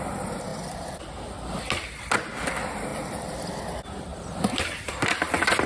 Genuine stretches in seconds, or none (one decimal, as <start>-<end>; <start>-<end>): 0.0-0.5; 1.0-2.9; 3.5-4.1; 4.9-5.7